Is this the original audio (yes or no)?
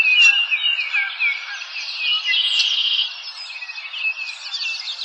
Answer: yes